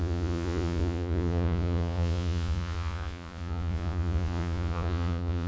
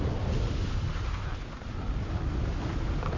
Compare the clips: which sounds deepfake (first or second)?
first